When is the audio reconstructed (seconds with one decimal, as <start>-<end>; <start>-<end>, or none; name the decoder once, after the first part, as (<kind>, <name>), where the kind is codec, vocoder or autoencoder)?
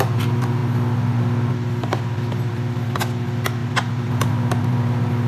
none